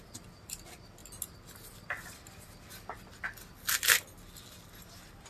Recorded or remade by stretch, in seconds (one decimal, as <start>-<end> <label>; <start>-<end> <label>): 0.0-5.3 recorded